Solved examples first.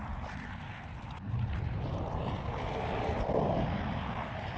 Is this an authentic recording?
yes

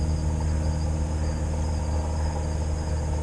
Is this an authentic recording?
yes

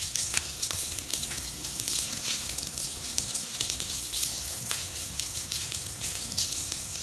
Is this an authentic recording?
no